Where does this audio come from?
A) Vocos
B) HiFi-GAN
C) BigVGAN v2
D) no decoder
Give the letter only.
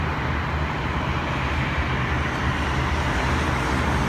D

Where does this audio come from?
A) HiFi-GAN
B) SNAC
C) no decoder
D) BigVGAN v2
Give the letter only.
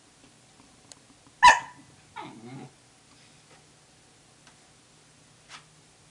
C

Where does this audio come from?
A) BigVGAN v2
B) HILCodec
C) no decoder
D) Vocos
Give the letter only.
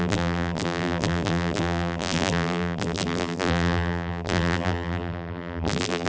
A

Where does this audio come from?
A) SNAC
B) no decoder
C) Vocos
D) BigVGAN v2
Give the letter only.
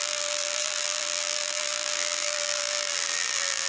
D